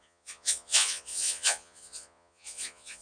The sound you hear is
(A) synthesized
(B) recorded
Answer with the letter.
A